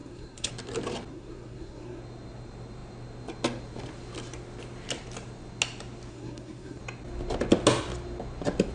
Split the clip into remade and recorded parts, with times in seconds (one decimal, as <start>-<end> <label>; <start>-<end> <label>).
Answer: 0.0-0.5 remade; 0.5-1.1 recorded; 1.1-2.0 remade; 2.0-6.1 recorded; 6.1-6.8 remade; 6.8-8.7 recorded